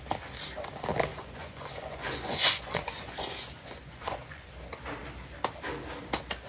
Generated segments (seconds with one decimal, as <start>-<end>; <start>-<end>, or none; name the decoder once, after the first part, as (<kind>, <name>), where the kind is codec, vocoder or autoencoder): 1.1-4.5 (vocoder, Vocos)